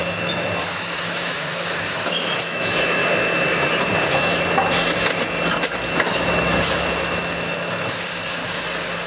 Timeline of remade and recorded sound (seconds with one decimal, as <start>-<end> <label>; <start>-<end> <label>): 0.0-3.0 remade; 3.0-5.9 recorded; 5.9-8.4 remade; 8.4-9.1 recorded

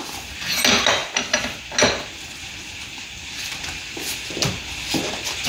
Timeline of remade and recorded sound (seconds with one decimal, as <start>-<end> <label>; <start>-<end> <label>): 0.0-5.5 recorded

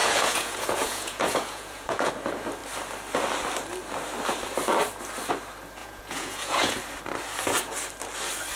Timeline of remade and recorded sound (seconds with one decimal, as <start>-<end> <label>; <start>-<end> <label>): 0.0-2.1 remade; 2.1-5.8 recorded; 5.8-6.8 remade; 6.8-8.6 recorded

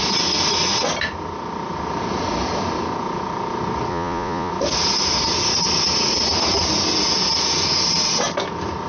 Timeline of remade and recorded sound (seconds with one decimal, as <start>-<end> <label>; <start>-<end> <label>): 0.0-3.9 recorded; 3.9-4.5 remade; 4.5-8.9 recorded